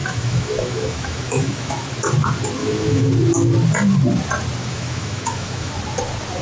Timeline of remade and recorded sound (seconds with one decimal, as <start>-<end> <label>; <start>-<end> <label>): 0.0-1.9 remade; 1.9-2.6 recorded; 2.6-3.1 remade; 3.1-4.6 recorded; 4.6-5.7 remade; 5.7-6.4 recorded